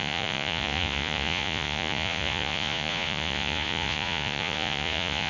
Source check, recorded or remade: remade